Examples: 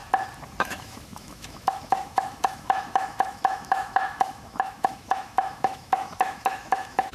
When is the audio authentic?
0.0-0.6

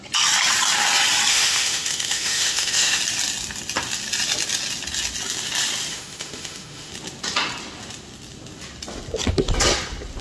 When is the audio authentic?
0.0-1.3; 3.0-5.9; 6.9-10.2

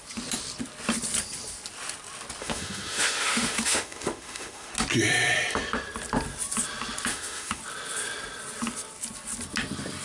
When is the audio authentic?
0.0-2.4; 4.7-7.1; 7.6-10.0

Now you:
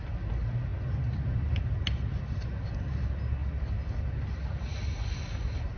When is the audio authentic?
0.0-5.8

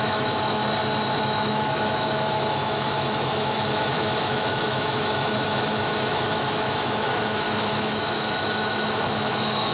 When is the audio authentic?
0.6-1.2

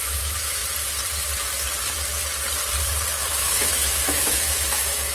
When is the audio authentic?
0.6-3.2